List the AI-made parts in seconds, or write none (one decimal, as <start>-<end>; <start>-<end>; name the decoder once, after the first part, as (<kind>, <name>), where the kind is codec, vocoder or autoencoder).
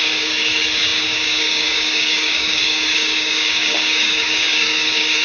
0.0-5.2 (codec, DAC)